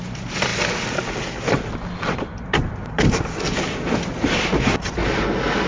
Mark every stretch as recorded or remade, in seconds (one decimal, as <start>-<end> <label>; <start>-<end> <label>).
0.0-5.7 recorded